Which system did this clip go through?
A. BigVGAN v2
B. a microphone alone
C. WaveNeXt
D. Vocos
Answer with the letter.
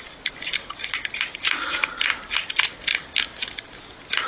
B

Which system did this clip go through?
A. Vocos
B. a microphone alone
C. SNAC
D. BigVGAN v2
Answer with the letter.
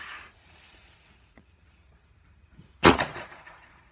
A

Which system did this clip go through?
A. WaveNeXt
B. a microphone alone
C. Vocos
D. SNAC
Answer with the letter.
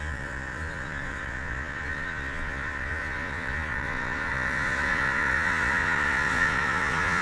C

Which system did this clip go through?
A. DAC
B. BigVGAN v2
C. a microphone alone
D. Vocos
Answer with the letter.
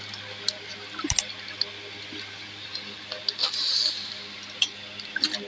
C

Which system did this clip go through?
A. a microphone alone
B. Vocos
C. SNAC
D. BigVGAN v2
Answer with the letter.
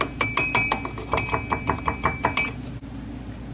A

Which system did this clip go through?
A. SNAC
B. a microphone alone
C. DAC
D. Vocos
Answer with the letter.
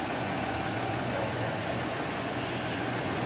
D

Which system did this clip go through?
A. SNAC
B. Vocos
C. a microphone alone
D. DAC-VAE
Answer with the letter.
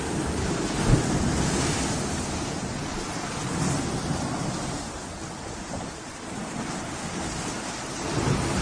C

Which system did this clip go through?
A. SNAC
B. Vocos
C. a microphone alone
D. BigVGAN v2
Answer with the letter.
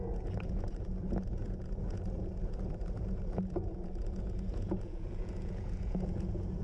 B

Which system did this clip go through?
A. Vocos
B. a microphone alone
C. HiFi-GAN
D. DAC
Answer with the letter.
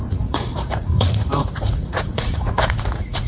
A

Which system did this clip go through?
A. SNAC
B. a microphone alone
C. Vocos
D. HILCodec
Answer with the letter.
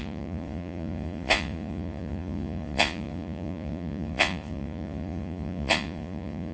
C